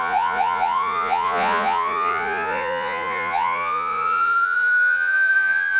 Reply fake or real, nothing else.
fake